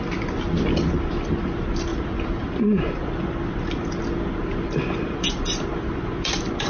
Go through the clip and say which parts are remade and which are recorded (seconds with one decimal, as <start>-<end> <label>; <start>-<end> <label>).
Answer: 0.0-1.9 recorded; 1.9-2.8 remade; 2.8-6.7 recorded